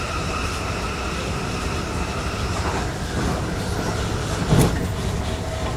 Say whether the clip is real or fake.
real